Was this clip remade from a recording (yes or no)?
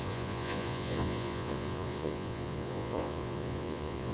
yes